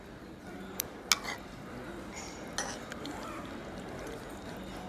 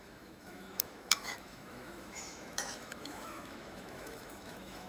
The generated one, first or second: second